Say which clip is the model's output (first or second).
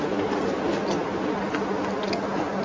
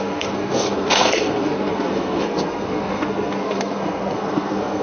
second